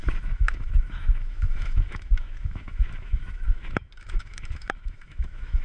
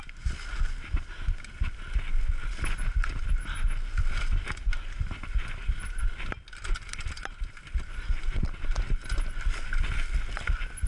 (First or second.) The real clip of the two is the second